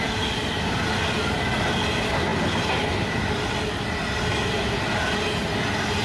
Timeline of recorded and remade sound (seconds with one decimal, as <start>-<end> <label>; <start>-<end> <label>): 0.0-6.0 recorded